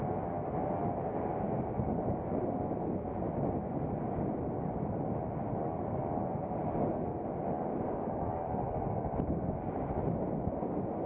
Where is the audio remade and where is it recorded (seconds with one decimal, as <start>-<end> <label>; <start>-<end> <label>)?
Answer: 0.0-11.1 recorded